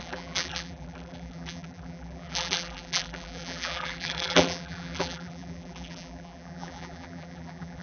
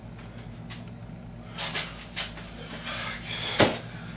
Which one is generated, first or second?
first